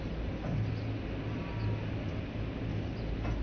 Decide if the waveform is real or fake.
real